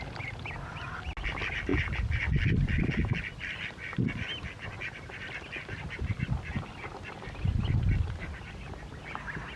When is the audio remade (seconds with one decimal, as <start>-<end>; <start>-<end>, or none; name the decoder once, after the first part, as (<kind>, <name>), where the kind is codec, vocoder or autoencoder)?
none